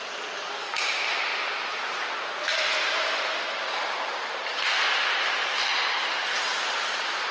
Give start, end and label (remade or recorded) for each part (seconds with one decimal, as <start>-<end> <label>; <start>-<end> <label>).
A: 0.0-1.3 recorded; 1.3-1.8 remade; 1.8-2.5 recorded; 2.5-7.3 remade